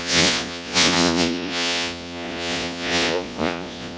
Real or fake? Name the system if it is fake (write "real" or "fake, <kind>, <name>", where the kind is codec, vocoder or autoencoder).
fake, vocoder, Vocos